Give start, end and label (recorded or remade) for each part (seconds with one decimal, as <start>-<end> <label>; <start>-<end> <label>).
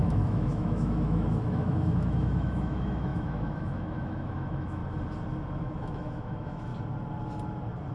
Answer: 0.0-4.8 remade; 4.8-5.6 recorded; 5.6-6.7 remade; 6.7-7.9 recorded